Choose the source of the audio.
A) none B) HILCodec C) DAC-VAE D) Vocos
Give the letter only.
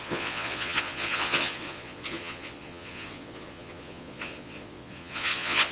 D